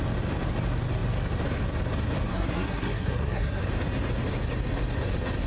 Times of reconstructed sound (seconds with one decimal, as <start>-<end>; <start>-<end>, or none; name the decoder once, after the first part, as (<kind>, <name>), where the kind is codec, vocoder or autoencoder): 2.3-3.6 (codec, SNAC)